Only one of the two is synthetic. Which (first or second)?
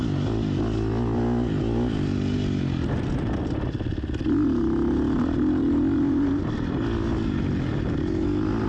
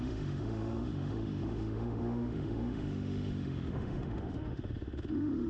second